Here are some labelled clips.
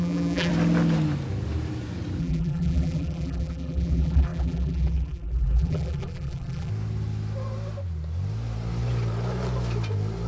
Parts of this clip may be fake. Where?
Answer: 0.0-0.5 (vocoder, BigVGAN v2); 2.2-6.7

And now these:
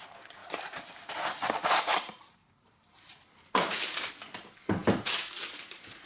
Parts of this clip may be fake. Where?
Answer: 0.4-4.1 (vocoder, BigVGAN v2)